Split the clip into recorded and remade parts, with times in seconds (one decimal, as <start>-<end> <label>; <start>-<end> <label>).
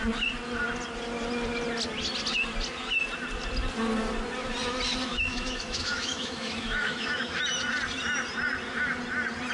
0.0-5.1 recorded; 5.1-7.4 remade; 7.4-9.5 recorded